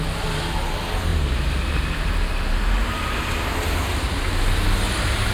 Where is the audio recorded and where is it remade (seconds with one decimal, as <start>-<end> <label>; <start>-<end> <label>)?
0.0-5.3 recorded